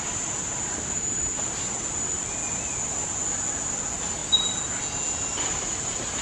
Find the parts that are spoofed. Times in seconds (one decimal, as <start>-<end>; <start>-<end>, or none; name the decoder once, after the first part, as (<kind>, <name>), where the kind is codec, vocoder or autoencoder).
none